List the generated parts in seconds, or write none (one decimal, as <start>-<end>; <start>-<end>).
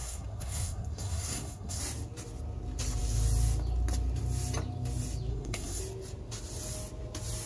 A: 0.0-1.8; 5.3-5.8